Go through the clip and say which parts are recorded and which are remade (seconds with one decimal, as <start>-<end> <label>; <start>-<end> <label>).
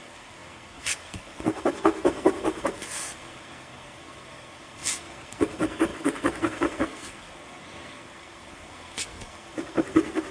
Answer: 0.0-10.3 remade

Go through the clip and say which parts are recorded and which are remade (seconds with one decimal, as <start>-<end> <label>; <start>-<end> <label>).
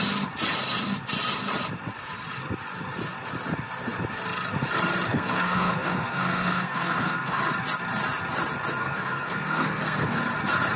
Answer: 0.0-5.1 recorded; 5.1-7.4 remade; 7.4-8.8 recorded; 8.8-10.2 remade; 10.2-10.8 recorded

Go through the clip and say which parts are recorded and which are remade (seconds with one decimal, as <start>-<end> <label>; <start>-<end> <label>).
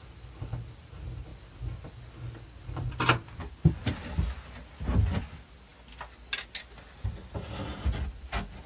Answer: 0.0-8.7 recorded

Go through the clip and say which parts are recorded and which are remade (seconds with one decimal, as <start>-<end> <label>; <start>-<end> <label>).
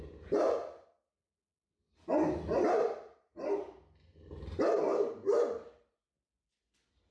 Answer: 0.0-7.1 recorded